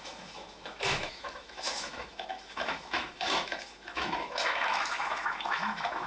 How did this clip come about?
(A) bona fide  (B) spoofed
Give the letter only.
B